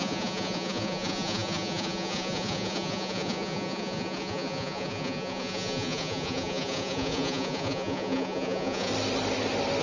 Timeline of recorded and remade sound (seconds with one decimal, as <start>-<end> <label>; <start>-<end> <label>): 0.0-8.9 remade; 8.9-9.8 recorded